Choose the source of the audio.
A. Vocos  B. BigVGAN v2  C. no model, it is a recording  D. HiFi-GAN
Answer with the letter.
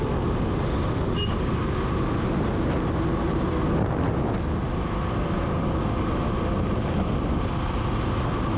C